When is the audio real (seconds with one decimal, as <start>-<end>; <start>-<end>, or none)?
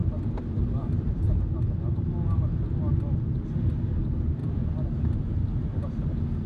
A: 1.8-4.4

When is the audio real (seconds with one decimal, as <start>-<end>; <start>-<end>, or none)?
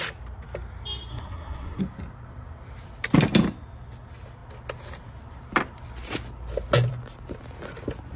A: 0.0-1.1; 1.8-8.2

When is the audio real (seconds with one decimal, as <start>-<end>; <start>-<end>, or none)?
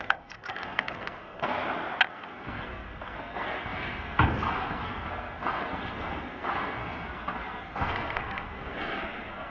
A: 1.5-2.1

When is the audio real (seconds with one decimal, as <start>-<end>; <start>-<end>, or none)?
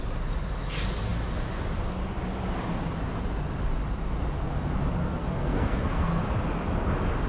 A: 0.0-5.2; 6.2-7.3